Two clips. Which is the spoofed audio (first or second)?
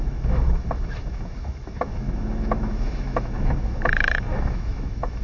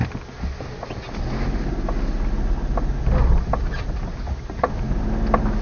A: first